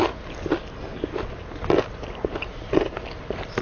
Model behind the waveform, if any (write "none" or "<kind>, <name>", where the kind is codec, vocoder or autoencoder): none